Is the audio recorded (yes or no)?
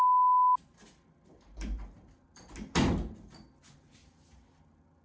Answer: yes